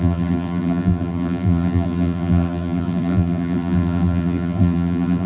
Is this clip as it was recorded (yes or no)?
no